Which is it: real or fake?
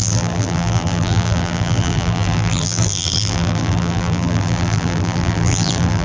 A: fake